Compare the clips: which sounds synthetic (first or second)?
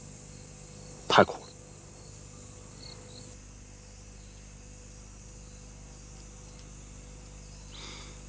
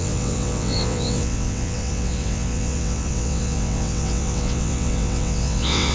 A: second